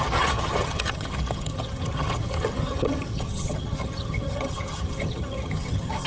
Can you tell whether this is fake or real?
fake